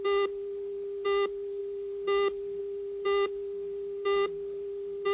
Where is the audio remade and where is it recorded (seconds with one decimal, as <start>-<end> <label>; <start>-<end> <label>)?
0.0-5.1 recorded